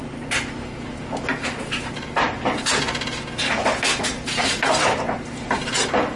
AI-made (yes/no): no